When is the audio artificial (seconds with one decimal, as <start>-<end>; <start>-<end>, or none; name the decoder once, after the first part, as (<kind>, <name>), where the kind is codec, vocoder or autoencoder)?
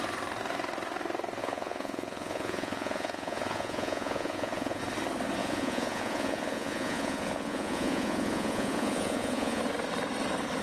1.4-4.8 (vocoder, Vocos); 5.4-9.6